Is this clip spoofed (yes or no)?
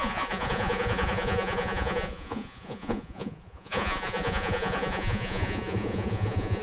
yes